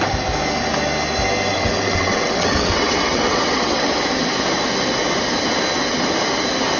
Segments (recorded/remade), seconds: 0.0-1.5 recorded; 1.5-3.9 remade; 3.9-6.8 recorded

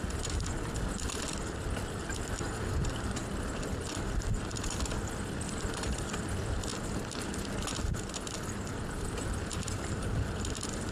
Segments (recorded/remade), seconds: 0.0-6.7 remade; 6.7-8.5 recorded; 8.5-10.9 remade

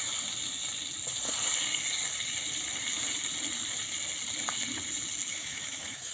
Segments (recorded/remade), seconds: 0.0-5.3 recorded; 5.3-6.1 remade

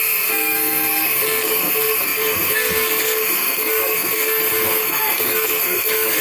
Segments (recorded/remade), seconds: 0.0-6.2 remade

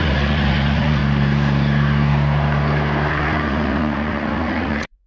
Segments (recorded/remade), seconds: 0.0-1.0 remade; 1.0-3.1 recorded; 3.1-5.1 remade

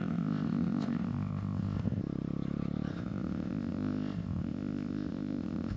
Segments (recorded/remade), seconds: 0.0-2.0 remade; 2.0-2.9 recorded; 2.9-5.8 remade